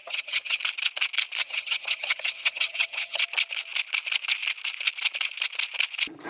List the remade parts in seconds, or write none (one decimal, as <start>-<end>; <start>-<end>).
0.0-0.6; 1.4-3.2